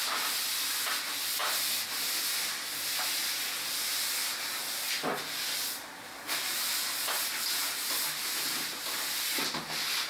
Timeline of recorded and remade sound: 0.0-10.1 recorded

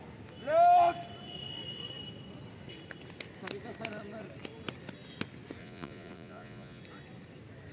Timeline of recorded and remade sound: 0.0-5.6 recorded; 5.6-6.8 remade; 6.8-7.7 recorded

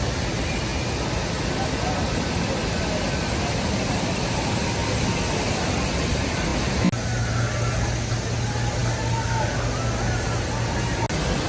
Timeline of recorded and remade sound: 0.0-11.5 recorded